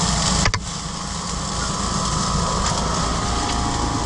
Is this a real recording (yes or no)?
yes